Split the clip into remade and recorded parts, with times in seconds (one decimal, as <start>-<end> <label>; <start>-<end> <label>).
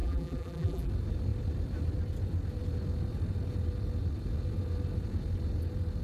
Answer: 0.0-0.9 remade; 0.9-6.0 recorded